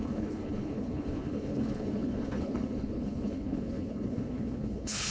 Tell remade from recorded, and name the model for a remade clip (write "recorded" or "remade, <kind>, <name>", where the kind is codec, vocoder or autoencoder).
remade, codec, HILCodec